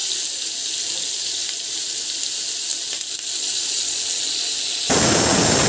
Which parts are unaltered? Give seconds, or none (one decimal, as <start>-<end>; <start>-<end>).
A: 0.0-5.7